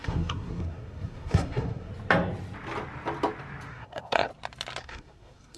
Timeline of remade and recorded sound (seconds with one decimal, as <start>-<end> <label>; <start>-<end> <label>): 0.0-1.9 remade; 1.9-3.7 recorded; 3.7-4.3 remade; 4.3-4.8 recorded; 4.8-5.6 remade